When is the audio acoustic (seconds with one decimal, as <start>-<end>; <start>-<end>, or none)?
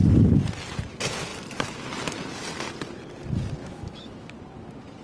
0.0-3.6; 4.3-5.0